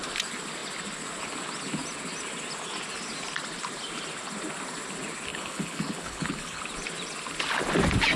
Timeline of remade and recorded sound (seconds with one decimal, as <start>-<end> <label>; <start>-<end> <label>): 0.0-5.3 recorded; 5.3-6.6 remade; 6.6-8.2 recorded